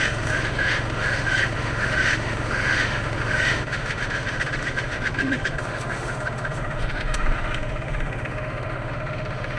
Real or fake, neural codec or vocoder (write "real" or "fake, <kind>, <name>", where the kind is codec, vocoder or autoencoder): fake, autoencoder, DAC-VAE